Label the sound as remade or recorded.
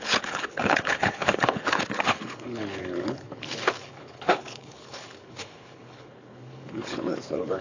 remade